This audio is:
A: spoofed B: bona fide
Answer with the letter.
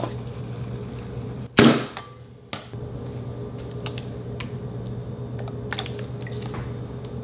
B